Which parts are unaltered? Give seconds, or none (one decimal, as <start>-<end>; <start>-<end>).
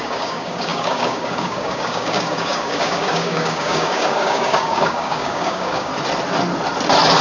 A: 5.9-7.2